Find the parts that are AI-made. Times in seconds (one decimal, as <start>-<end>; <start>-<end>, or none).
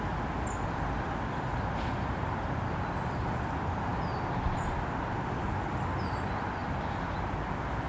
none